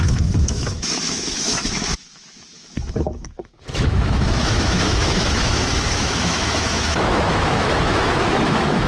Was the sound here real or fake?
fake